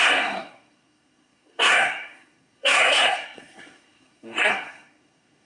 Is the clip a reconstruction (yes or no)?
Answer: yes